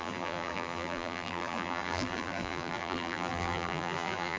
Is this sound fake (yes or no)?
yes